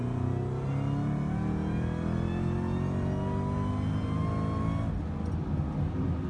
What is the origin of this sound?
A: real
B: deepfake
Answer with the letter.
A